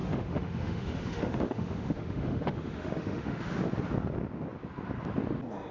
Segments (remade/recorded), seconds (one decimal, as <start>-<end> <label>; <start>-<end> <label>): 0.0-3.4 remade; 3.4-5.7 recorded